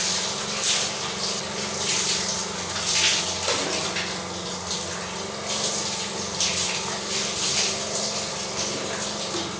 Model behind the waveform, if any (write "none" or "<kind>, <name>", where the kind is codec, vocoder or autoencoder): none